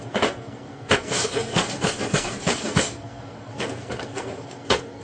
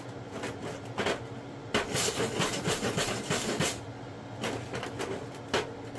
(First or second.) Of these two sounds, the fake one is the first